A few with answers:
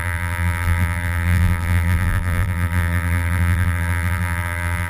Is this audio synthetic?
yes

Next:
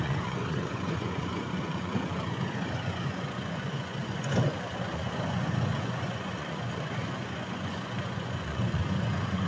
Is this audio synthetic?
yes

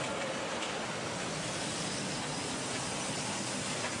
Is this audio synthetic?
no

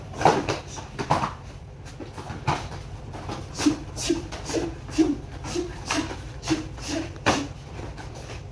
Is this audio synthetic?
yes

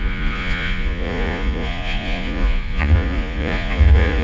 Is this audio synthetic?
yes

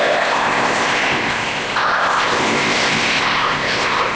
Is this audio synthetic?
yes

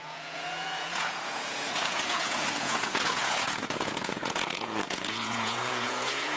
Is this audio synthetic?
yes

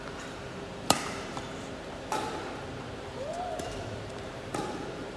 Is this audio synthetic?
yes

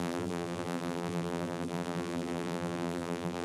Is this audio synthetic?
yes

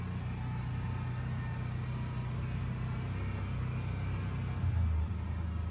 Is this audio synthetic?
no